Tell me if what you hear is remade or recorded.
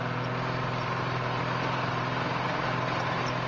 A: recorded